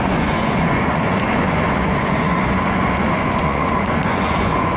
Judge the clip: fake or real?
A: fake